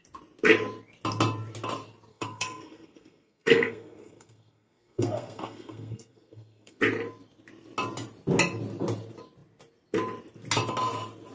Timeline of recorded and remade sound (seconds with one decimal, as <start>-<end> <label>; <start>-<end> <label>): 0.0-2.1 recorded; 2.1-6.8 remade; 6.8-11.3 recorded